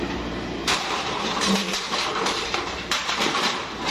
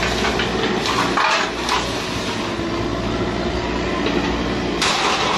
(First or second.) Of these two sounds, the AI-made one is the first